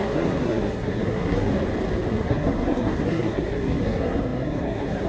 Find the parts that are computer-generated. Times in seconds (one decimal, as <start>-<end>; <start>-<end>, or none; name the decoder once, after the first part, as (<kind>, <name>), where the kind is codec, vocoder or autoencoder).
0.0-1.5 (codec, SNAC); 2.1-5.1